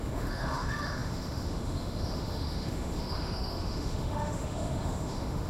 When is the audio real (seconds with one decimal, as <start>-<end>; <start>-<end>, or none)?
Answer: none